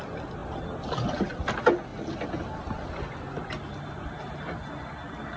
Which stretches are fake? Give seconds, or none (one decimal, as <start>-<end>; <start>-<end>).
1.9-3.1